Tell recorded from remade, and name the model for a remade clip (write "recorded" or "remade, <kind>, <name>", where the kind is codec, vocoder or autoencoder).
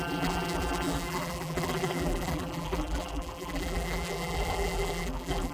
remade, vocoder, BigVGAN v2